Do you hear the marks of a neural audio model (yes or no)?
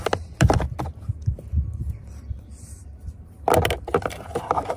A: yes